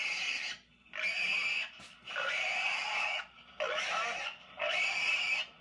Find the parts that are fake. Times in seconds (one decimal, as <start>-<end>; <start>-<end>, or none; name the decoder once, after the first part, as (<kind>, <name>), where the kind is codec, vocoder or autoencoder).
1.6-5.0 (vocoder, BigVGAN v2)